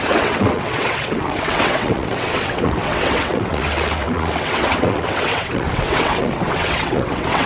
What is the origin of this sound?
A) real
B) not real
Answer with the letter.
B